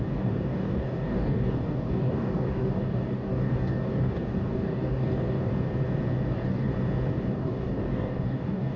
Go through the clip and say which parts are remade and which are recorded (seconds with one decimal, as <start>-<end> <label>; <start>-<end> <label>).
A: 0.0-5.5 remade; 5.5-6.3 recorded; 6.3-6.7 remade; 6.7-7.3 recorded; 7.3-8.8 remade